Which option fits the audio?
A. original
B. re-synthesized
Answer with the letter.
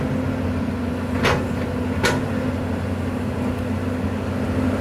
A